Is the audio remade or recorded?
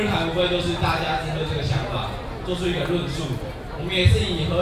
recorded